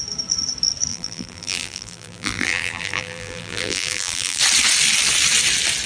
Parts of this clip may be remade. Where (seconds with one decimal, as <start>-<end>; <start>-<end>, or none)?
0.9-4.4